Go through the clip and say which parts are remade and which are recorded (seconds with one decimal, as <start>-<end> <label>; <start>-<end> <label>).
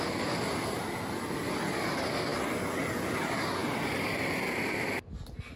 0.0-5.6 recorded